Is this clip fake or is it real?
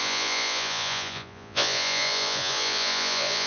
fake